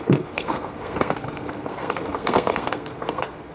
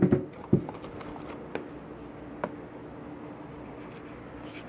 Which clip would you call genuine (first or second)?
second